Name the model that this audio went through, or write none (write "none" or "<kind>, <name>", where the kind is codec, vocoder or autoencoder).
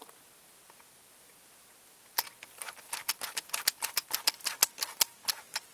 none